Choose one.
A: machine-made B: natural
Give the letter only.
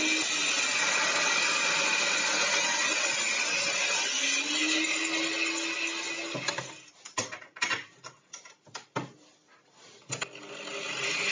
B